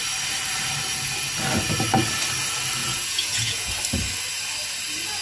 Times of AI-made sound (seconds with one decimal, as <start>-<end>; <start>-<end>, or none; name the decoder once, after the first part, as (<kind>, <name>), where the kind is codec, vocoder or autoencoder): 2.8-3.7 (vocoder, Vocos)